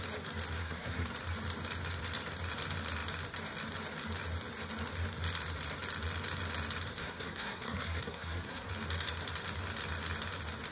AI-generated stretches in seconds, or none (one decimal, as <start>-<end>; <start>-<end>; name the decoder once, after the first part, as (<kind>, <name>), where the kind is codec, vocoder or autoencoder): 0.6-1.1 (codec, SNAC); 7.0-8.7